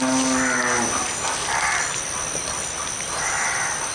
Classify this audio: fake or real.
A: real